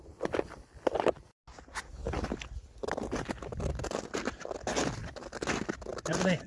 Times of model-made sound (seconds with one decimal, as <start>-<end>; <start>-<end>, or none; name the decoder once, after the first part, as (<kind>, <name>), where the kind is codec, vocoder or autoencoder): none